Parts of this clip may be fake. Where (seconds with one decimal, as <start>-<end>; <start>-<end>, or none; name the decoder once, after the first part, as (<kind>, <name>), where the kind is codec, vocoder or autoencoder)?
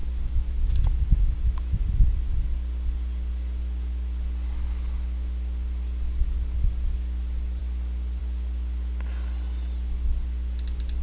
none